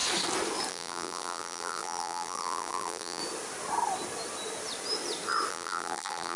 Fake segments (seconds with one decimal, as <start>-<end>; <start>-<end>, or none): 0.7-3.2; 5.5-6.4